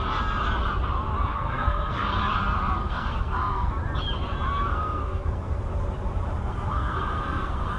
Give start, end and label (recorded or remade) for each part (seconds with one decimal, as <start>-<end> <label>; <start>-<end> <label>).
0.0-1.3 recorded; 1.3-2.2 remade; 2.2-2.8 recorded; 2.8-3.7 remade; 3.7-4.7 recorded; 4.7-5.6 remade; 5.6-6.4 recorded; 6.4-7.8 remade